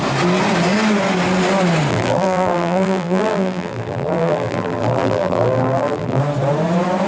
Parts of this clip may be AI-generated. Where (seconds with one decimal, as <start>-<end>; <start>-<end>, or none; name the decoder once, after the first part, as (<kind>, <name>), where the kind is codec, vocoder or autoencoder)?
1.9-6.2 (vocoder, BigVGAN v2)